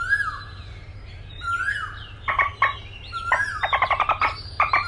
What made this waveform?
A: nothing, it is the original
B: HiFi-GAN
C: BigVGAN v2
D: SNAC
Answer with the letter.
C